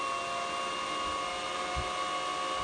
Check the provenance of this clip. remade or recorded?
recorded